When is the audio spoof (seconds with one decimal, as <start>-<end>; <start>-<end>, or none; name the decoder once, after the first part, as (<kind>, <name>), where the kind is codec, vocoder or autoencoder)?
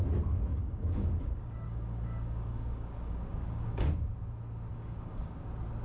0.5-3.8 (codec, DAC); 4.7-5.3